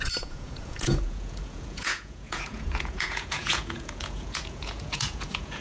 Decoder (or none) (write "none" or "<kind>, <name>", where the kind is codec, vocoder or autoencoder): vocoder, Vocos